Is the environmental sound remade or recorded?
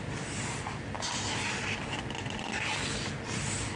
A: recorded